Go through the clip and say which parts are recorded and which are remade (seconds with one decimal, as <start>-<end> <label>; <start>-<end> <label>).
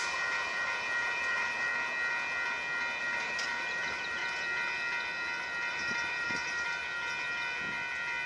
0.0-1.7 remade; 1.7-3.0 recorded; 3.0-4.2 remade; 4.2-5.7 recorded; 5.7-6.8 remade; 6.8-8.3 recorded